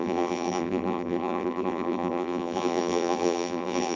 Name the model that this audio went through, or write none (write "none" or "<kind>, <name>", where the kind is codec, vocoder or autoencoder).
vocoder, BigVGAN v2